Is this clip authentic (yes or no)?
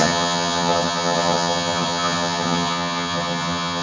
no